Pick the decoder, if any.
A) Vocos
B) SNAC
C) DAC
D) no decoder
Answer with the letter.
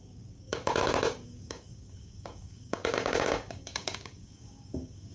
C